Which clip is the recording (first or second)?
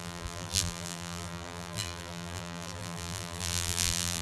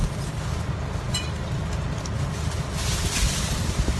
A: second